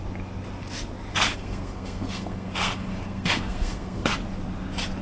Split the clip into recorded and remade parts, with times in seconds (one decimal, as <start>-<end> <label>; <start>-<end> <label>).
0.0-1.1 recorded; 1.1-4.1 remade; 4.1-5.0 recorded